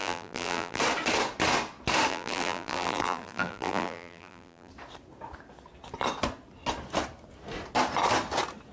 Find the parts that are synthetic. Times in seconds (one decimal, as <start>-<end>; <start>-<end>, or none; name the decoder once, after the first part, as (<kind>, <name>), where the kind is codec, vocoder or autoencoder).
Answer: 0.0-0.8 (vocoder, BigVGAN v2); 2.1-4.7

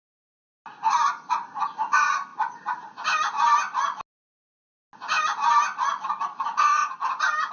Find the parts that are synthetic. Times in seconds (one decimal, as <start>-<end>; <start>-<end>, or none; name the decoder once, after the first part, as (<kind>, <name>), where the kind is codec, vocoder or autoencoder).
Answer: none

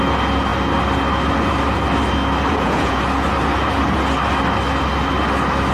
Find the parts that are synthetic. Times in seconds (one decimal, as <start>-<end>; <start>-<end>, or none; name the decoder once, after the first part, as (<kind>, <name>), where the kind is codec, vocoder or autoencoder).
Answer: 2.5-3.0 (vocoder, Vocos)

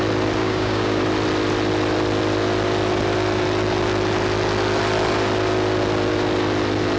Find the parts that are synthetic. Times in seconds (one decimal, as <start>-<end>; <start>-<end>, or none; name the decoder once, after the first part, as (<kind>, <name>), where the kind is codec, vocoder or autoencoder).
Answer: 0.4-1.0 (codec, DAC)

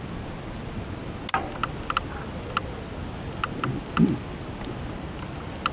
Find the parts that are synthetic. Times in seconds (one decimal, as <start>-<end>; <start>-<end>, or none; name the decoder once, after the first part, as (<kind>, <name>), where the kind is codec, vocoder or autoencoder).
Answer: none